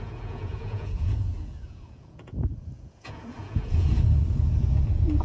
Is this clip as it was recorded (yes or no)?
no